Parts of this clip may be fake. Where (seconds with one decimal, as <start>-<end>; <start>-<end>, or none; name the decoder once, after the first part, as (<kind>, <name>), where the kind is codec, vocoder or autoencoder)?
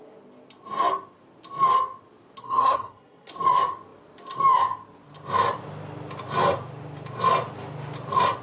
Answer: 2.4-3.3 (codec, SNAC)